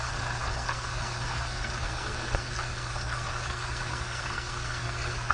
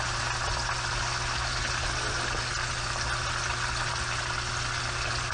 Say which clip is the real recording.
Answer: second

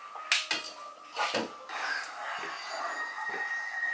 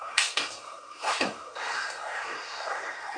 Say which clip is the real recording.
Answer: first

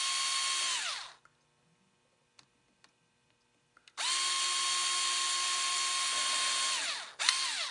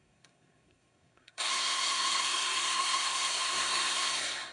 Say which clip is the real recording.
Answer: first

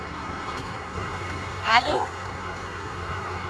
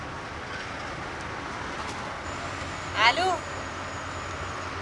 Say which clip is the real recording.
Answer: second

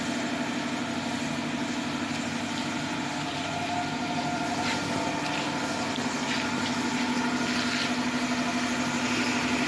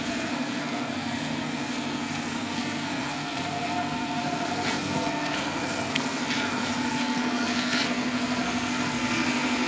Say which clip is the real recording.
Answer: first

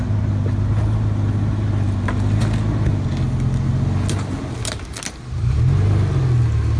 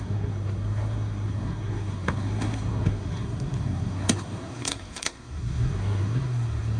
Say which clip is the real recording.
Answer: first